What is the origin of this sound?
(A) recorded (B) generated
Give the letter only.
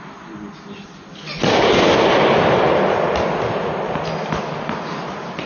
A